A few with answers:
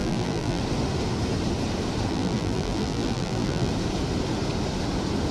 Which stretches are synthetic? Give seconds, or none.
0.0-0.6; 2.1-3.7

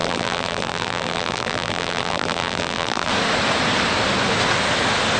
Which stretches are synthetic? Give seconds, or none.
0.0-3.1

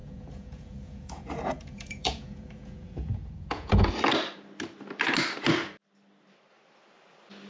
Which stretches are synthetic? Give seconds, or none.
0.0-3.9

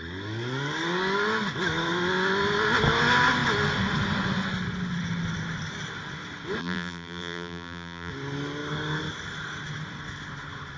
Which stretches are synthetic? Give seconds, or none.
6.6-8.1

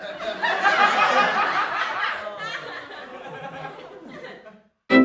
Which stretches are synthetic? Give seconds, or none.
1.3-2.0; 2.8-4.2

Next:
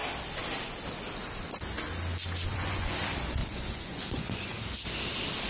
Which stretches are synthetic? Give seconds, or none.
2.5-3.0; 3.4-4.6